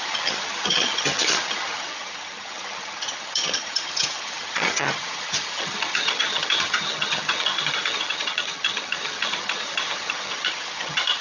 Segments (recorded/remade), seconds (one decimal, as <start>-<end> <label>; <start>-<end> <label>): 0.0-11.2 remade